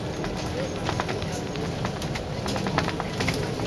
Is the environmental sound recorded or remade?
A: recorded